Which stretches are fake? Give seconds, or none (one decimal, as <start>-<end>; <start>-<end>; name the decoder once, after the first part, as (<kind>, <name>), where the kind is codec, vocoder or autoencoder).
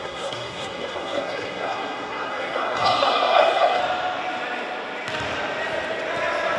0.0-3.8 (codec, SNAC)